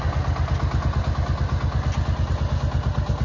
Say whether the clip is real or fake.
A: real